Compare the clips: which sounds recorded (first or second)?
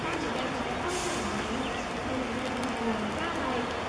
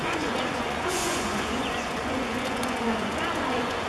first